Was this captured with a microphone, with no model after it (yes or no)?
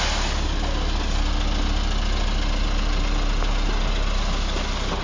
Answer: yes